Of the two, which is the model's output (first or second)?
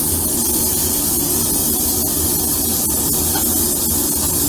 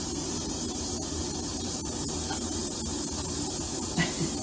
second